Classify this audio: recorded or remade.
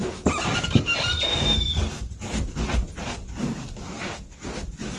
recorded